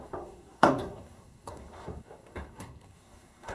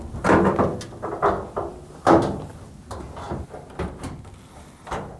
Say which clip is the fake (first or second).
first